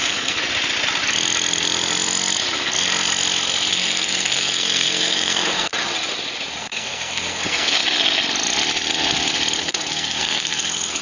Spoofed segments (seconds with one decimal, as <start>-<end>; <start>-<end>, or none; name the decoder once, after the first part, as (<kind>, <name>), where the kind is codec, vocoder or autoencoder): 0.0-0.4 (codec, SNAC); 3.7-5.7; 6.6-7.8; 9.6-11.0